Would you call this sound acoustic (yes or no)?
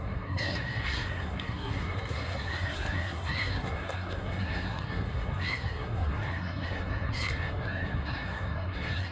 no